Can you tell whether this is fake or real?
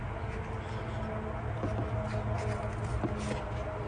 real